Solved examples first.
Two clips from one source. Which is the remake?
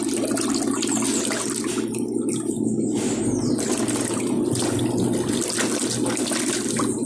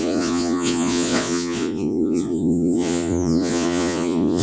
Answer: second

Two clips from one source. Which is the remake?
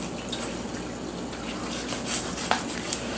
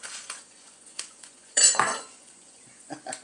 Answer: second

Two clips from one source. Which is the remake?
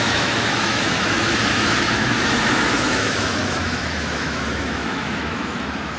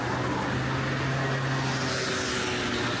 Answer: first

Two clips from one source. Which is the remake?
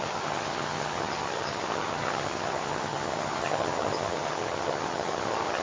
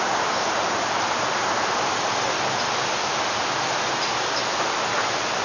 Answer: first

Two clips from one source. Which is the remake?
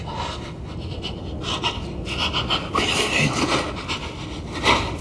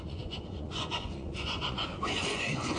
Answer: second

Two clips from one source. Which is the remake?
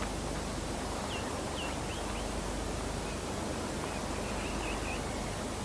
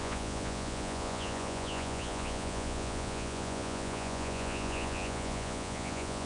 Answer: second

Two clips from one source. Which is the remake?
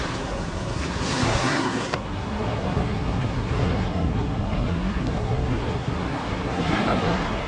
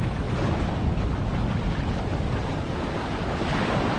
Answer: first